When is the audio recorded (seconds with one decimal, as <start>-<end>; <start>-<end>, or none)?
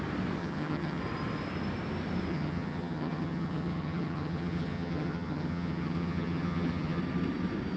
0.0-0.4; 1.0-2.3; 7.0-7.8